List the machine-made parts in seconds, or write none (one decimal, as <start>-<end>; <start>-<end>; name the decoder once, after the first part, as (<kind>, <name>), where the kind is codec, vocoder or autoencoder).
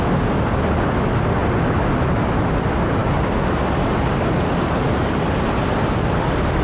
none